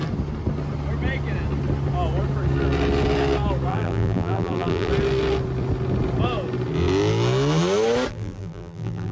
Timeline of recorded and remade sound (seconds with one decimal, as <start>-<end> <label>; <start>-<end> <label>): 0.0-3.7 recorded; 3.7-4.9 remade; 4.9-8.1 recorded; 8.1-9.1 remade